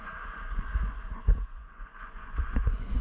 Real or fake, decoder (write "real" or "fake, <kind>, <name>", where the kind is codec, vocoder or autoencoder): fake, vocoder, Vocos